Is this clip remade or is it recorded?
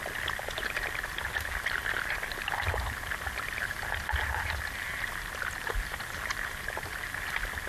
recorded